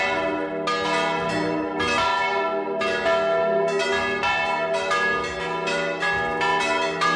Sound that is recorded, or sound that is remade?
recorded